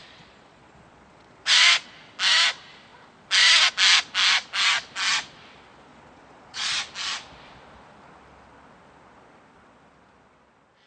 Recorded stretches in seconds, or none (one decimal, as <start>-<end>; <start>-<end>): 1.9-5.9; 6.8-10.9